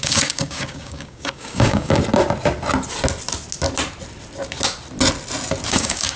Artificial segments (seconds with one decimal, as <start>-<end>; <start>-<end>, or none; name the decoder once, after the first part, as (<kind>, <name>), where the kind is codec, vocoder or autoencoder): 0.0-2.0 (codec, DAC); 5.7-6.2